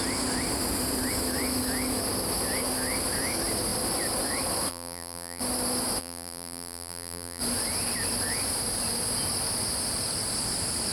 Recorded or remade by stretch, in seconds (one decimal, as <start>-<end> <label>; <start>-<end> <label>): 0.0-4.7 recorded; 4.7-5.4 remade; 5.4-6.0 recorded; 6.0-7.4 remade; 7.4-10.9 recorded